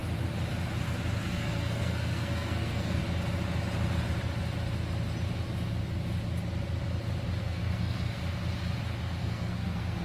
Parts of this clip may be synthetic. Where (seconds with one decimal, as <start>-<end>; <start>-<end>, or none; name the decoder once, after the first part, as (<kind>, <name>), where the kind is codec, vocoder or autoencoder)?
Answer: 1.2-3.0 (codec, SNAC); 7.4-8.2; 9.2-10.0